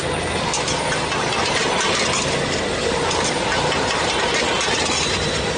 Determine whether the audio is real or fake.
real